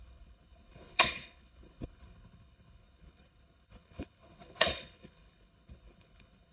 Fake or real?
fake